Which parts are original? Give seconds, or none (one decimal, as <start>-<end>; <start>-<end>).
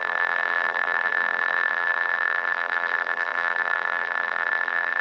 none